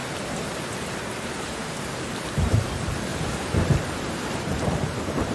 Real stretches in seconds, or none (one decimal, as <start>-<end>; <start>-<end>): 0.0-1.3; 3.1-5.3